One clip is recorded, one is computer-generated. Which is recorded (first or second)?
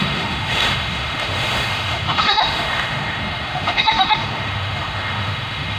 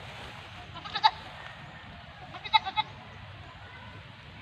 second